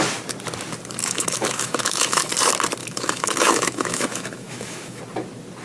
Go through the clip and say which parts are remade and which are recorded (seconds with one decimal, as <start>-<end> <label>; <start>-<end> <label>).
0.0-1.0 recorded; 1.0-2.3 remade; 2.3-2.8 recorded; 2.8-5.0 remade; 5.0-5.6 recorded